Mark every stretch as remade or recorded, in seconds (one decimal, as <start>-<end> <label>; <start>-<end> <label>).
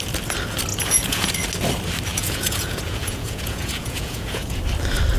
0.0-0.7 recorded; 0.7-1.3 remade; 1.3-2.1 recorded; 2.1-4.6 remade; 4.6-5.2 recorded